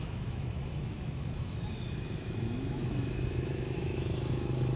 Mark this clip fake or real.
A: fake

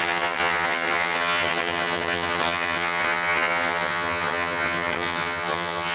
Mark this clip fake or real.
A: fake